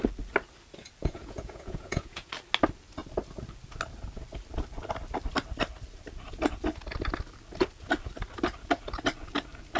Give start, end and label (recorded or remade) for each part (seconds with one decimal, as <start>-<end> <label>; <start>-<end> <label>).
0.0-1.0 recorded; 1.0-2.3 remade; 2.3-9.8 recorded